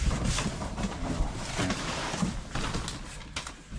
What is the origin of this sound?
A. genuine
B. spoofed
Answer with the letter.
A